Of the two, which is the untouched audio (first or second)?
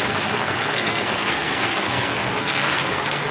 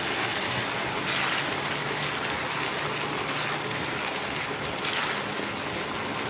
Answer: second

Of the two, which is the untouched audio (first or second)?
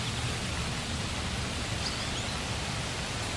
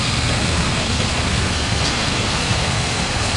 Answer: first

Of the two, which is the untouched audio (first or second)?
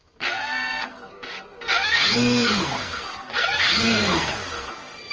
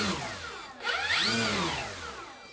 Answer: second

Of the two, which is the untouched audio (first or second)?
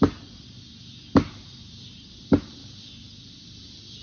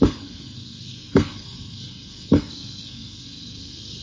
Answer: first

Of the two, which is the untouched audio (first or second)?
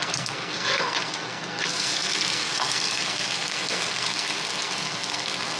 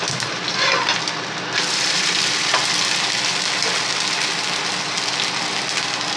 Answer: second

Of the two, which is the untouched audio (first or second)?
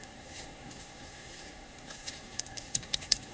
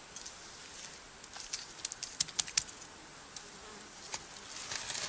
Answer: second